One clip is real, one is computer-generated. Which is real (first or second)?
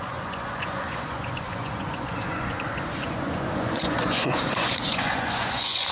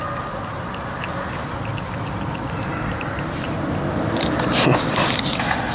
second